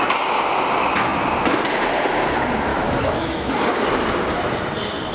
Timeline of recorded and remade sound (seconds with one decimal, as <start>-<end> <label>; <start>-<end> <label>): 0.0-2.7 recorded; 2.7-3.5 remade; 3.5-5.1 recorded